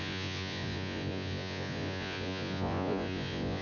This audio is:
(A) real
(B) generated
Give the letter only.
B